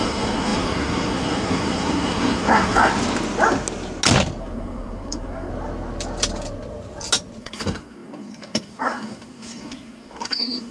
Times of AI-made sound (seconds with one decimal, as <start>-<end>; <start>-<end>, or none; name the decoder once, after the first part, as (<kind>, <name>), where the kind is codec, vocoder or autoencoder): 0.0-2.9 (codec, SNAC); 4.4-5.5; 7.4-10.7